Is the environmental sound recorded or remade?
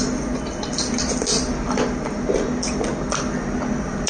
recorded